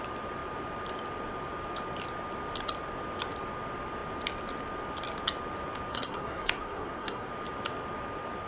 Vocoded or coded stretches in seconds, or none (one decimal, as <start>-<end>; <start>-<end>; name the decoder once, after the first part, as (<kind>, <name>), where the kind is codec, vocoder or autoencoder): 5.9-7.3 (codec, SNAC)